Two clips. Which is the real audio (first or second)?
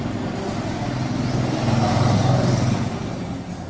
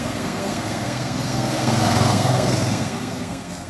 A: first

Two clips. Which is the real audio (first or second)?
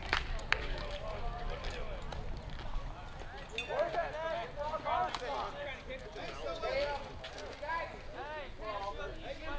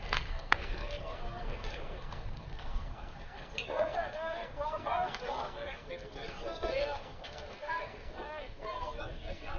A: first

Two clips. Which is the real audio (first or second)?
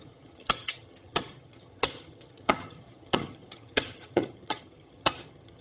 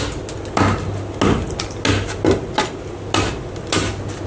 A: second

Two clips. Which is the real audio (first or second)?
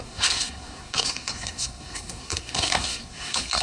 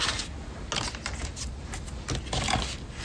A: second